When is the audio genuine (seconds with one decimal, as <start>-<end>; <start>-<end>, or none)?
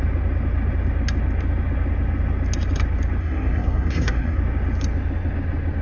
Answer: 0.0-3.2; 4.4-5.8